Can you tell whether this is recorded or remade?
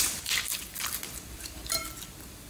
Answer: remade